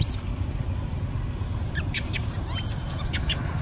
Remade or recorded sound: recorded